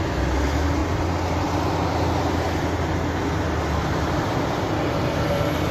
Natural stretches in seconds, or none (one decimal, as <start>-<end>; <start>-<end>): 0.0-5.7

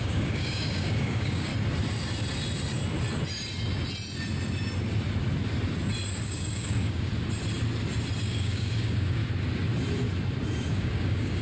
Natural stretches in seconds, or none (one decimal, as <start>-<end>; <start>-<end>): 1.5-6.1; 7.1-8.2; 9.2-10.7

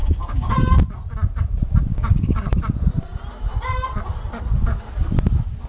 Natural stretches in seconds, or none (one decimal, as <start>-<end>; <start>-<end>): 0.5-1.9; 2.5-5.7

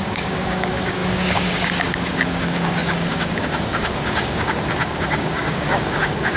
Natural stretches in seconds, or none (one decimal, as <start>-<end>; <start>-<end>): none

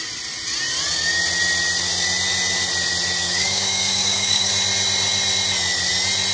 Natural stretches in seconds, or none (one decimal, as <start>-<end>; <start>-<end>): 0.0-3.2; 4.5-6.3

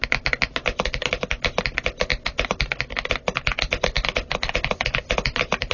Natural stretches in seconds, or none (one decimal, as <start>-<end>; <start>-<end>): 0.0-5.7

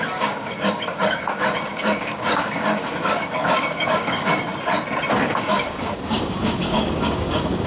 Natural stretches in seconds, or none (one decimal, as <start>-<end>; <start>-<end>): 4.5-5.2